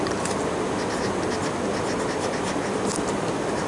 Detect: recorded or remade recorded